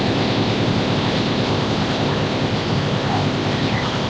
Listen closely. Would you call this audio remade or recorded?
remade